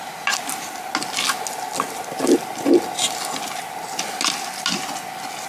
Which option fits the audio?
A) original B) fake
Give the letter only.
A